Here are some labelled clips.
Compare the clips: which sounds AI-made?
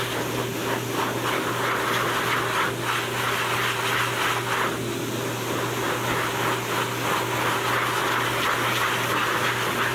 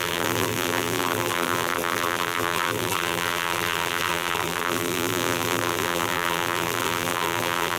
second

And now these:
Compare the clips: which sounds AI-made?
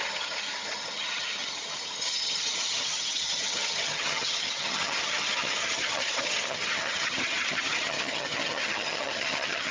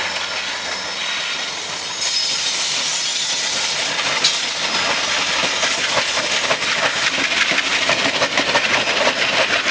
first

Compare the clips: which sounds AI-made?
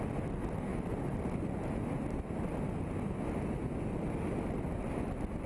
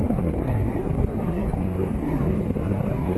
second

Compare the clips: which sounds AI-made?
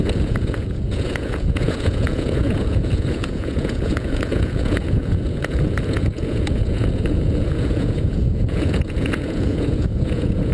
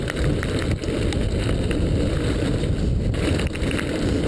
first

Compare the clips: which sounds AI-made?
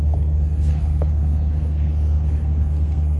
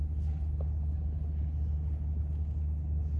first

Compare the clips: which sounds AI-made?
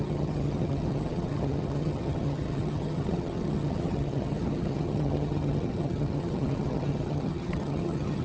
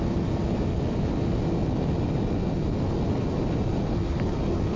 first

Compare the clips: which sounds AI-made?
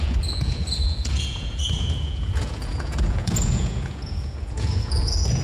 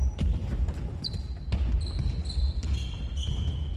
first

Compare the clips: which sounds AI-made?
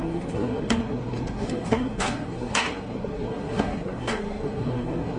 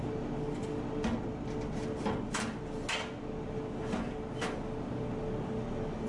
first